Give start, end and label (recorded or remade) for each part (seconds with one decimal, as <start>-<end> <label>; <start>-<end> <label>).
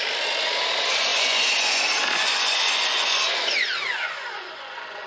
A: 0.0-1.1 recorded; 1.1-1.8 remade; 1.8-2.2 recorded; 2.2-5.1 remade